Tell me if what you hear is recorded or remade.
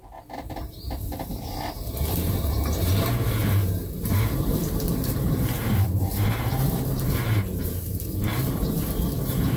remade